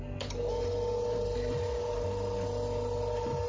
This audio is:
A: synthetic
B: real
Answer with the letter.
B